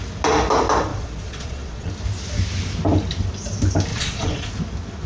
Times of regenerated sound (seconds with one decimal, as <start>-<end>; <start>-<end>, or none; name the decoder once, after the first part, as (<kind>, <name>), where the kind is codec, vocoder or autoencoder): 0.9-1.9 (vocoder, Vocos); 3.9-4.5